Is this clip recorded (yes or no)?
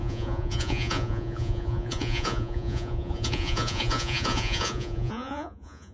no